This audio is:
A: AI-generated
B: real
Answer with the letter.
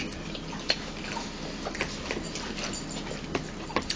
B